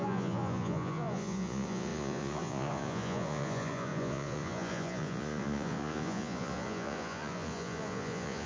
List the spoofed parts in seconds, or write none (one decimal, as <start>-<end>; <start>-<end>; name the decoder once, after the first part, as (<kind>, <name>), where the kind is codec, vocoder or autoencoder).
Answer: 0.0-8.5 (vocoder, Vocos)